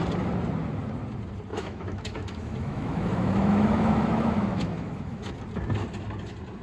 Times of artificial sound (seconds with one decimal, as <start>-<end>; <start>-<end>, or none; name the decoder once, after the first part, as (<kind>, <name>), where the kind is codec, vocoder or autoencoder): 1.5-5.3 (autoencoder, DAC-VAE)